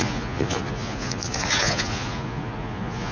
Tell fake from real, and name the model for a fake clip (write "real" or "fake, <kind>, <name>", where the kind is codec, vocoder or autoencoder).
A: fake, vocoder, Vocos